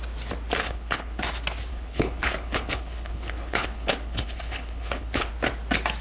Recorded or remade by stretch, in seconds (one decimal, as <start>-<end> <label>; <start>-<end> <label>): 0.0-0.6 recorded; 0.6-1.2 remade; 1.2-1.7 recorded; 1.7-5.3 remade; 5.3-6.0 recorded